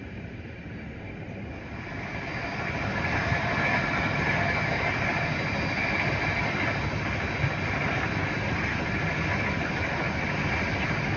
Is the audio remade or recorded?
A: recorded